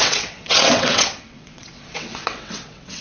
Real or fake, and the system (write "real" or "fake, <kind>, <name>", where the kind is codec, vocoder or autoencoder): fake, vocoder, WaveNeXt